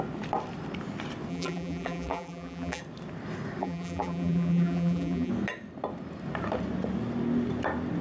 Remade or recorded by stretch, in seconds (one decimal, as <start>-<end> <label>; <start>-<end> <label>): 0.0-1.3 recorded; 1.3-2.8 remade; 2.8-3.6 recorded; 3.6-5.3 remade; 5.3-8.0 recorded